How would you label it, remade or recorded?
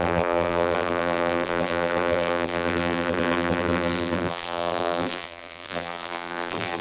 remade